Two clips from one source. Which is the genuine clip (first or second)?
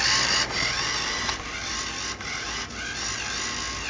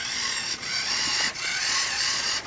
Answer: first